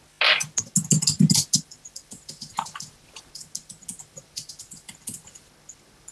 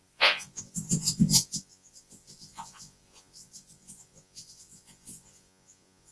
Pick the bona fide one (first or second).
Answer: first